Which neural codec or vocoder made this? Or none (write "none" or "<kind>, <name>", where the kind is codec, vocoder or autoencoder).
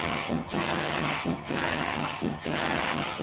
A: vocoder, HiFi-GAN